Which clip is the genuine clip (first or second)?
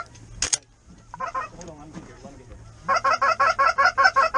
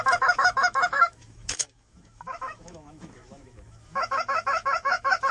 first